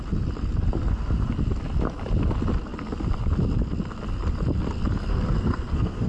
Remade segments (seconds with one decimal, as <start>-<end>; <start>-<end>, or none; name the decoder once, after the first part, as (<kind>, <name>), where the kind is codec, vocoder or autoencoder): 5.1-6.1 (codec, SNAC)